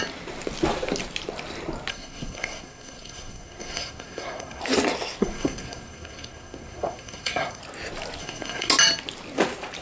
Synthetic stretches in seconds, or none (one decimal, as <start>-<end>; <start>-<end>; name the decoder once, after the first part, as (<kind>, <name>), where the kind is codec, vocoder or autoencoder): 1.9-4.6 (codec, SNAC); 5.2-7.6; 8.2-8.7